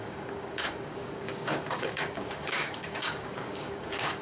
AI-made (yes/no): yes